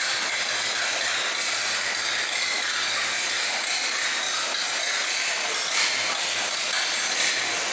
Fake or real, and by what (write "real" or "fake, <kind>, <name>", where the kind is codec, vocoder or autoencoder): real